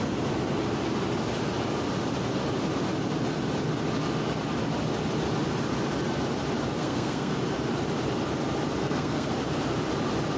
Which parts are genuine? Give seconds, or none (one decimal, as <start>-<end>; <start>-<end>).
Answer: 0.0-6.8; 7.4-8.8; 9.3-10.4